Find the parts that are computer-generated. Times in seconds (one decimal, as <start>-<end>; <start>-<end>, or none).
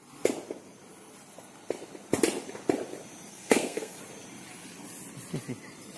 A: 3.3-4.0